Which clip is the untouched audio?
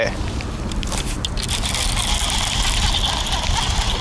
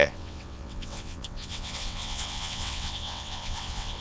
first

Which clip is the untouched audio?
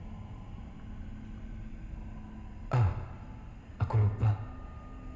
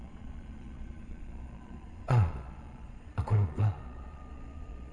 first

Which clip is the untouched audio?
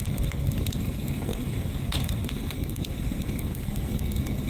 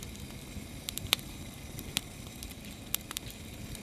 second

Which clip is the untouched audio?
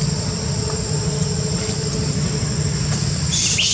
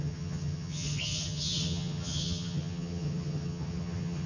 first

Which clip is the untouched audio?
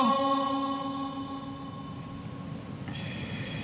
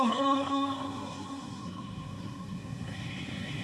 first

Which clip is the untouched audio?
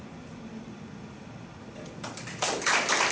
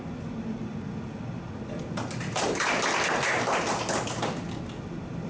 second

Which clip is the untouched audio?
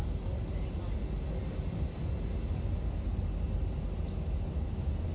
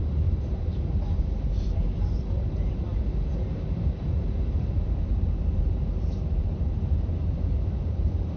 first